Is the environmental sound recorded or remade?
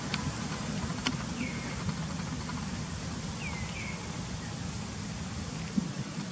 recorded